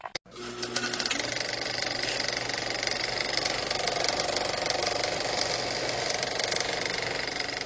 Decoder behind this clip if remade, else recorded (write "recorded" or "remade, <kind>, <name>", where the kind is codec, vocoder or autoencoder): recorded